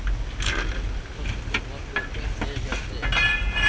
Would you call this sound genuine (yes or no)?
yes